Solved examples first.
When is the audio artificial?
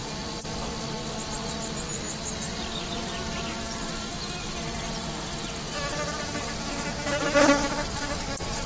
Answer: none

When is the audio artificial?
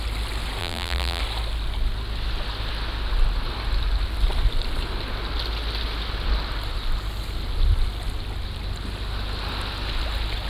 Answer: 0.6-1.2 (vocoder, BigVGAN v2)